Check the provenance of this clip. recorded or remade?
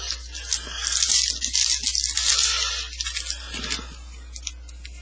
recorded